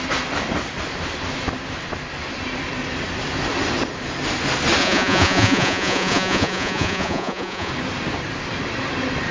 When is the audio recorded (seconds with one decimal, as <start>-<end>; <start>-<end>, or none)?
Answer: 0.0-4.8; 7.7-9.3